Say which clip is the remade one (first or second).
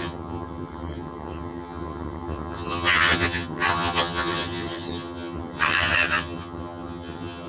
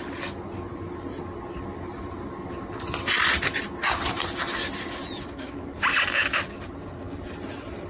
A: first